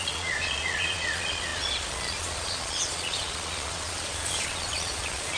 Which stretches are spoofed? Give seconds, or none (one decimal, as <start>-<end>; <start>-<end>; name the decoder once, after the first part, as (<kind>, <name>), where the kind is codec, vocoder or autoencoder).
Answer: 0.0-5.4 (vocoder, Vocos)